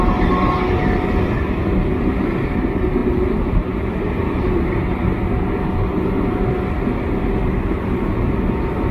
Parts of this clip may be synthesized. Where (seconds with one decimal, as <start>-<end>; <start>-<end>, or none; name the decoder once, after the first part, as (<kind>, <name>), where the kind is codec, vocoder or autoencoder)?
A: none